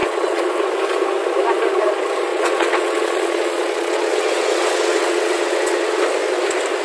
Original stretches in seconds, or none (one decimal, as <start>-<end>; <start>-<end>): 0.6-2.3; 6.0-6.8